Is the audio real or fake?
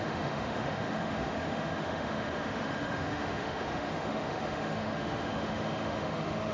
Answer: fake